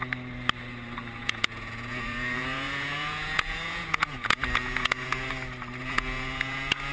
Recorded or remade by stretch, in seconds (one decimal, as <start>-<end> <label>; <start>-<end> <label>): 0.0-1.2 recorded; 1.2-5.3 remade; 5.3-5.8 recorded; 5.8-6.9 remade